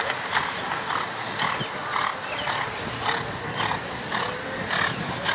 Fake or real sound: real